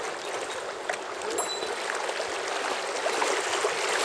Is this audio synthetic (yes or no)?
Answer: no